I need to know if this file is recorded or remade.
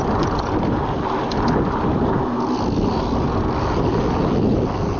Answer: recorded